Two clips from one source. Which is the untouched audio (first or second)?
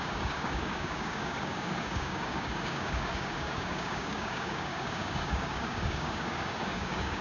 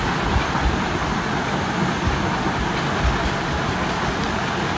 second